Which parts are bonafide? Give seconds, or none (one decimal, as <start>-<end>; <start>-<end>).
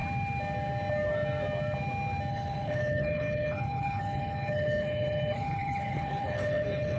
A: 0.0-2.3